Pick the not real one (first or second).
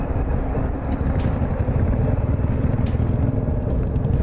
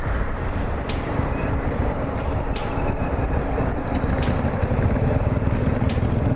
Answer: second